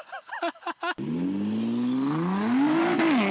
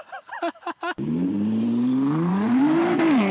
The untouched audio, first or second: first